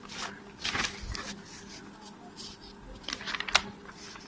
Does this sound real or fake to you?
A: real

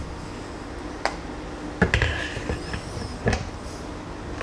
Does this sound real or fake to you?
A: real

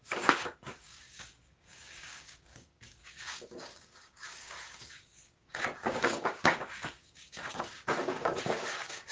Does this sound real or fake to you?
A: fake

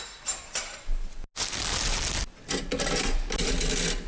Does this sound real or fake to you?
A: real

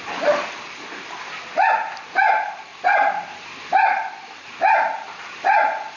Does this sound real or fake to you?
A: real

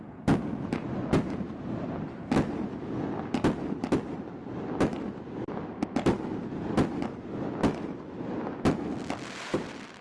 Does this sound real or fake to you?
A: real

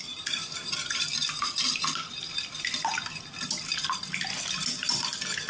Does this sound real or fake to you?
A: real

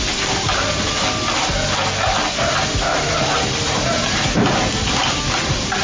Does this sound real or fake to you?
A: real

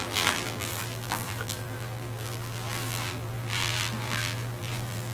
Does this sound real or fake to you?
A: fake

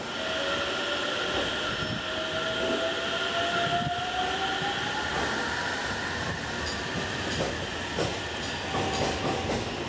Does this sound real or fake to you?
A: real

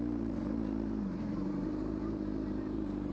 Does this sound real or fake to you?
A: fake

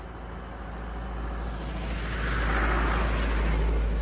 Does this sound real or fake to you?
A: real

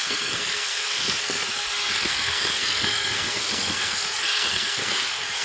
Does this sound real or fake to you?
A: fake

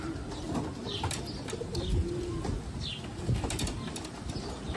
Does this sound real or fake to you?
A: real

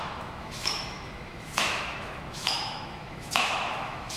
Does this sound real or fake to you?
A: fake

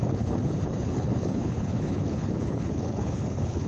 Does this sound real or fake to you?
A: fake